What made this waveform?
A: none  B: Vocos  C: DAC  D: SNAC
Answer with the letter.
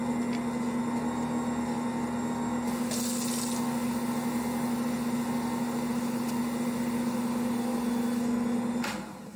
A